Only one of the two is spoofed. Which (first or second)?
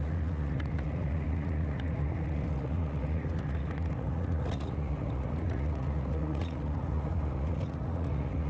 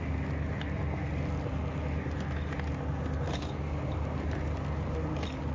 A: first